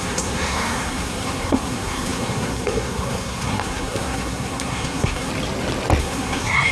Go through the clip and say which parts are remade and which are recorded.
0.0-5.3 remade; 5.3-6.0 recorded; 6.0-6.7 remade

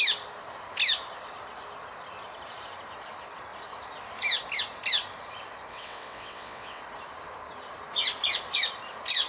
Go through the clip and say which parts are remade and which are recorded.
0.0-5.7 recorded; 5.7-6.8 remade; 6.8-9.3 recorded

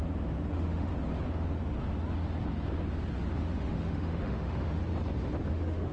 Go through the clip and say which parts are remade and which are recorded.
0.0-0.5 recorded; 0.5-0.9 remade; 0.9-3.4 recorded; 3.4-4.8 remade; 4.8-5.5 recorded; 5.5-5.9 remade

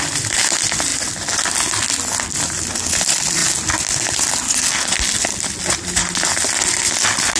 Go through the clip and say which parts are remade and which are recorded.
0.0-7.4 recorded

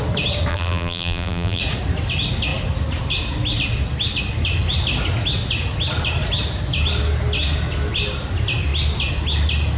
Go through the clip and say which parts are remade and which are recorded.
0.0-0.5 recorded; 0.5-1.6 remade; 1.6-9.8 recorded

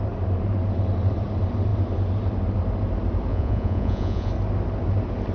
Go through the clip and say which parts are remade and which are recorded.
0.0-3.3 recorded; 3.3-4.3 remade; 4.3-5.3 recorded

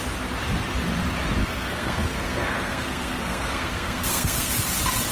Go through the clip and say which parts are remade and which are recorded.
0.0-1.4 recorded; 1.4-4.5 remade; 4.5-5.1 recorded